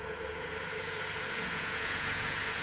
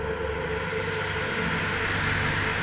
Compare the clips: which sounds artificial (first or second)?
first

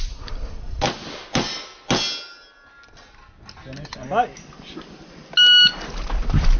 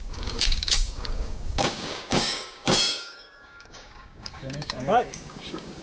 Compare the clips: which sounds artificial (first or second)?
second